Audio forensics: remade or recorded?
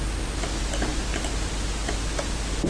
recorded